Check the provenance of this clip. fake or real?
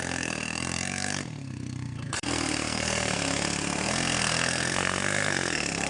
fake